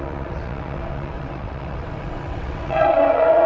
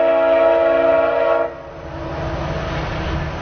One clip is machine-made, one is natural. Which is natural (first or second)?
second